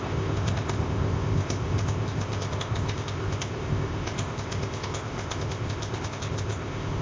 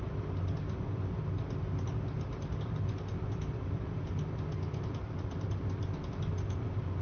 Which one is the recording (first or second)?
second